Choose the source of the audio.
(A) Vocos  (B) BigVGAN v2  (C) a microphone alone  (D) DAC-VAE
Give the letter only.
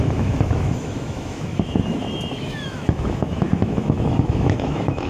D